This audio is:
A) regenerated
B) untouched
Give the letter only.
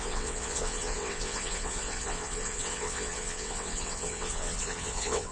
A